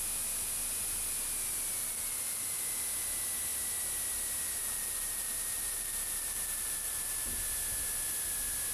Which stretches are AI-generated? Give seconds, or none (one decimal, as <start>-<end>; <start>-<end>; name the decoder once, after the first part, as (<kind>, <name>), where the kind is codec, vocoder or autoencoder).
1.8-2.6 (vocoder, BigVGAN v2); 4.6-7.4